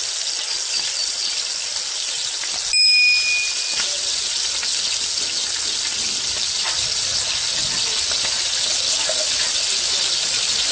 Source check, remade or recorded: recorded